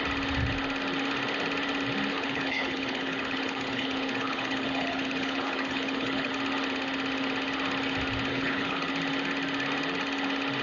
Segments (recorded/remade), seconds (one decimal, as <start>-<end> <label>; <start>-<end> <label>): 0.0-2.1 recorded; 2.1-6.3 remade; 6.3-8.3 recorded; 8.3-8.9 remade; 8.9-10.6 recorded